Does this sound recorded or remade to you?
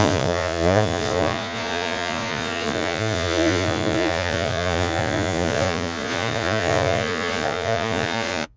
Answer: remade